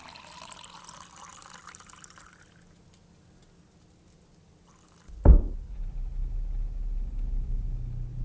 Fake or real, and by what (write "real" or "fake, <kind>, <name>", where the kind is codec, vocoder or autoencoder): real